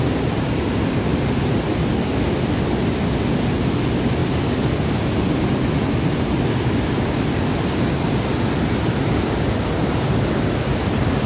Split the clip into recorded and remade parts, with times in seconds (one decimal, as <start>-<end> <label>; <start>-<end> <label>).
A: 0.0-11.3 recorded